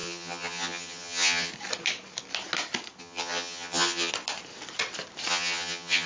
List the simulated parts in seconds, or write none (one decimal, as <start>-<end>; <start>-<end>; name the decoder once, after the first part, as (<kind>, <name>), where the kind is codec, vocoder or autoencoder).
0.0-1.5 (vocoder, HiFi-GAN); 3.0-4.1; 5.3-6.1